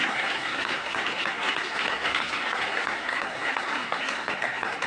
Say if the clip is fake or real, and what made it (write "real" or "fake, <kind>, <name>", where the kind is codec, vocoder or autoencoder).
fake, codec, SNAC